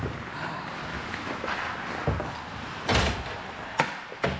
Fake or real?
real